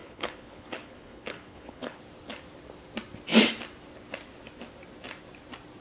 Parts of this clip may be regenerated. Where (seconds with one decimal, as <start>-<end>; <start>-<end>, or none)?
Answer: 0.0-2.0

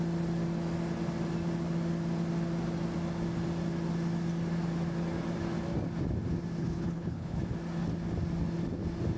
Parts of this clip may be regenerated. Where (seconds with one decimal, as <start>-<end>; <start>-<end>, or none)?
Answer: 6.6-7.4

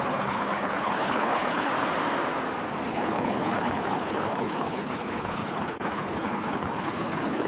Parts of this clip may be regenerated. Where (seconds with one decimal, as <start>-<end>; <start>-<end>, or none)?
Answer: 0.0-1.7; 2.9-7.5